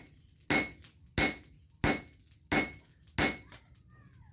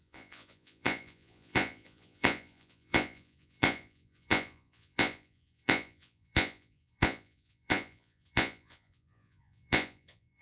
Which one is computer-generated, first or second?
second